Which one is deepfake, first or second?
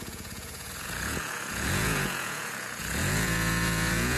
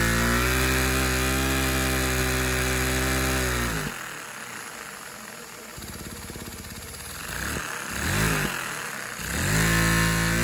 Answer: first